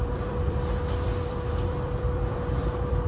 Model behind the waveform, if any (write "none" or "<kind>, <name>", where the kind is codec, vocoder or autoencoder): vocoder, BigVGAN v2